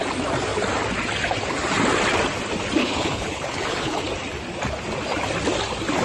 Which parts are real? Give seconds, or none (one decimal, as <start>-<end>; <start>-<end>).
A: 0.0-2.8; 4.0-6.0